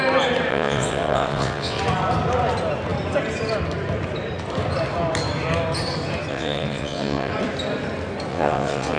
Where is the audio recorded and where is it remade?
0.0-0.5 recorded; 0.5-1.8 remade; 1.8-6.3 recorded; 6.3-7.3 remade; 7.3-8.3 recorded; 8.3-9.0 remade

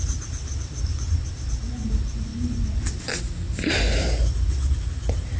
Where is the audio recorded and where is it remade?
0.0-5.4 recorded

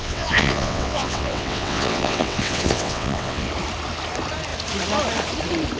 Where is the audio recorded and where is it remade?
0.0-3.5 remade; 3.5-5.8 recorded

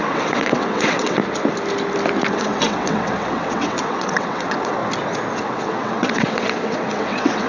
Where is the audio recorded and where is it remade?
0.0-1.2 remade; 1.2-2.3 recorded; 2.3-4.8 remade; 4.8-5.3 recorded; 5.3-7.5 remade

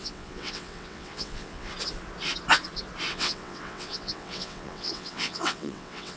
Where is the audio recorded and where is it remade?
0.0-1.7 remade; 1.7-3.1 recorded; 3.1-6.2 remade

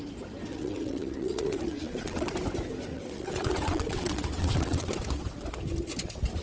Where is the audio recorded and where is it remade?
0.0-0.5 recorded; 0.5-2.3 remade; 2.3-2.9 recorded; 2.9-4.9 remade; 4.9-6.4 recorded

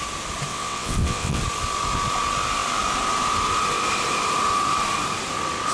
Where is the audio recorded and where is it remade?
0.0-0.5 recorded; 0.5-1.4 remade; 1.4-5.7 recorded